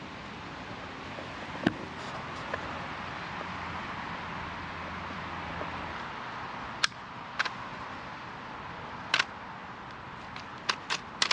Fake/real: real